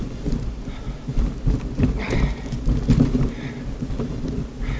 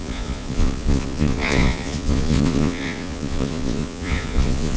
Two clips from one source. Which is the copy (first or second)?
second